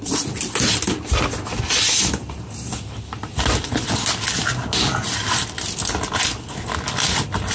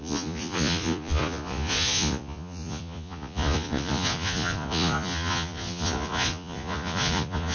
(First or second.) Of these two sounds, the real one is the first